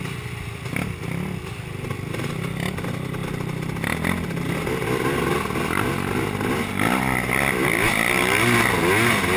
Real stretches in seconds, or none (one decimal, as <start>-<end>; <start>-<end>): 0.0-9.4